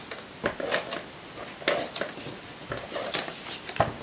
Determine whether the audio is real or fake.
real